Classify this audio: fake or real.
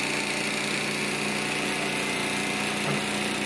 real